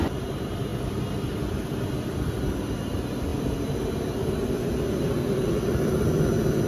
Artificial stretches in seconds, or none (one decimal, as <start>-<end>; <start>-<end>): none